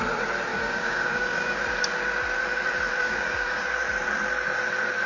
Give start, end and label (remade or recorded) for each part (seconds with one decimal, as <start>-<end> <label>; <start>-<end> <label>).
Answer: 0.0-0.5 recorded; 0.5-1.6 remade; 1.6-3.0 recorded; 3.0-3.7 remade; 3.7-5.1 recorded